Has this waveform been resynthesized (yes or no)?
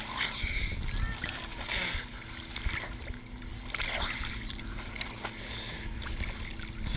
no